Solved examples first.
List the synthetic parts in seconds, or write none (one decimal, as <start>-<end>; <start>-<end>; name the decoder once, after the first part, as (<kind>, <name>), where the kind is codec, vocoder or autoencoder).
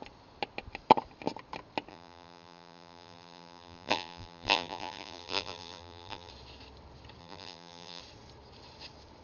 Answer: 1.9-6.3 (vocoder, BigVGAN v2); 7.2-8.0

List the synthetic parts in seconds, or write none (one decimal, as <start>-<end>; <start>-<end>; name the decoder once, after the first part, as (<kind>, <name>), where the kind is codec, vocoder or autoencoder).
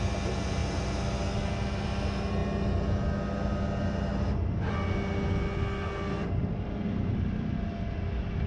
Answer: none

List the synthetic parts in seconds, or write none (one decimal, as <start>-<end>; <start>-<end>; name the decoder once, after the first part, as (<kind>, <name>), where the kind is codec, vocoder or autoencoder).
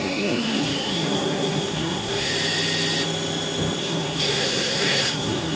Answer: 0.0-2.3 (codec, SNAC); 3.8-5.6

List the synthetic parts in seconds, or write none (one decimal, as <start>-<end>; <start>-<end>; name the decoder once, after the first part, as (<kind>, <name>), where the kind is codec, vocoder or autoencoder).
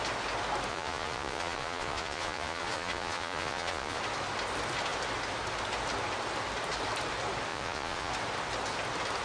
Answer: 0.7-4.0 (vocoder, Vocos); 7.5-8.1